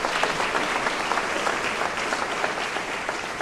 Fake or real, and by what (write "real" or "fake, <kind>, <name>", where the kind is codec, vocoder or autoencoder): real